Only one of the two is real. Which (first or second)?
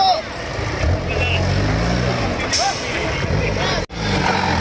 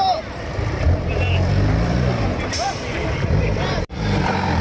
first